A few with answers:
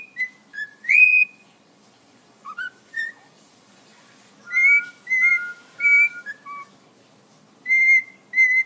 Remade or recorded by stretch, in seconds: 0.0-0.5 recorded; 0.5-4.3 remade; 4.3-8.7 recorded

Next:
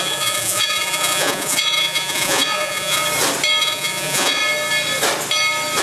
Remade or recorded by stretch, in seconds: 0.0-3.0 remade; 3.0-3.6 recorded; 3.6-4.4 remade; 4.4-5.8 recorded